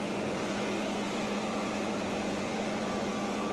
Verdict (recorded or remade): remade